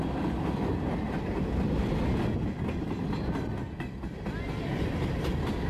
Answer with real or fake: real